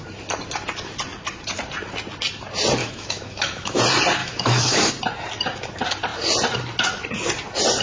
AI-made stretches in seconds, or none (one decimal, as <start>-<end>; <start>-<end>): 2.8-3.8; 4.2-4.9